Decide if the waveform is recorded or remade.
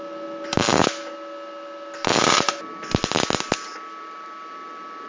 recorded